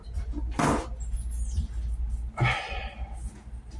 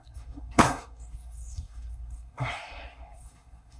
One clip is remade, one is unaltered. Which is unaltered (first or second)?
first